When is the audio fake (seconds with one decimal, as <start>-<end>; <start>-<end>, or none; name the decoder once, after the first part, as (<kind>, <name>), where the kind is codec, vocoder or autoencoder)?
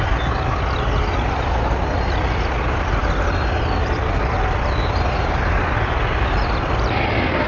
none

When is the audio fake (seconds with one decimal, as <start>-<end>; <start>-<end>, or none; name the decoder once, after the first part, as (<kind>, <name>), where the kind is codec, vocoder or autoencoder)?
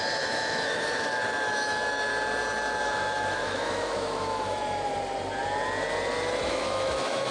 0.0-2.1 (autoencoder, DAC-VAE); 2.8-4.6; 6.5-7.3